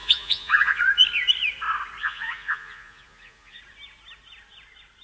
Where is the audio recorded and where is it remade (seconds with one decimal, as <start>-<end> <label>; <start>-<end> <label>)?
0.0-0.8 remade; 0.8-2.0 recorded; 2.0-3.6 remade; 3.6-5.0 recorded